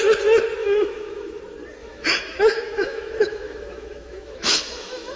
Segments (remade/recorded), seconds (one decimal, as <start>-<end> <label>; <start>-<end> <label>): 0.0-0.6 recorded; 0.6-1.4 remade; 1.4-1.8 recorded; 1.8-5.2 remade